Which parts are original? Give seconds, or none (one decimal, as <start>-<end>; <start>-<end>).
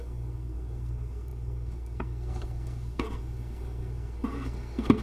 none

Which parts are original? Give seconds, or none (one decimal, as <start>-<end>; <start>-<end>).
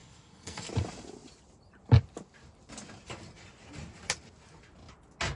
0.7-5.4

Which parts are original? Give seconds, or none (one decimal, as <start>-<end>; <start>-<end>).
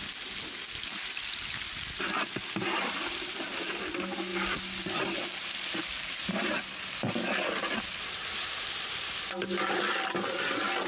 0.0-10.9